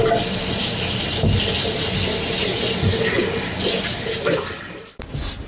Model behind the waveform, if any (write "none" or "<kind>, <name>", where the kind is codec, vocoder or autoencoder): none